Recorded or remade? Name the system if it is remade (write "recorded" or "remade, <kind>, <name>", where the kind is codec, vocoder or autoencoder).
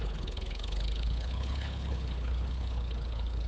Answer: remade, codec, HILCodec